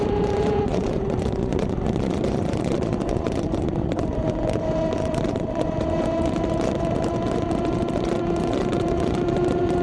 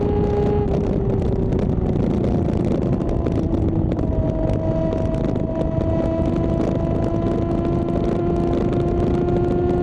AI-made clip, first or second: first